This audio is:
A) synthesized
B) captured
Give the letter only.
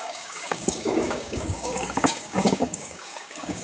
A